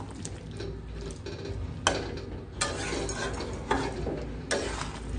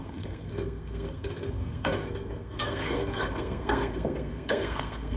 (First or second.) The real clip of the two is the first